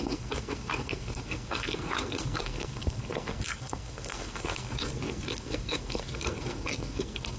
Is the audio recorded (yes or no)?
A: no